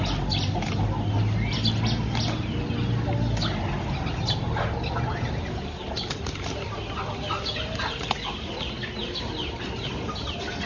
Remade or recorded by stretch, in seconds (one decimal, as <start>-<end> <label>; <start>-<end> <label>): 0.0-10.7 recorded